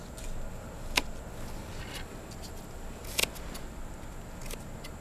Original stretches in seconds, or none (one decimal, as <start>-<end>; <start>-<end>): 0.0-5.0